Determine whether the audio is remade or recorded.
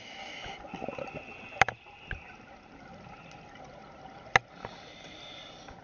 recorded